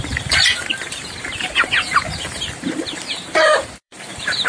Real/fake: fake